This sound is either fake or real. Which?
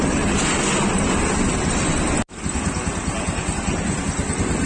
real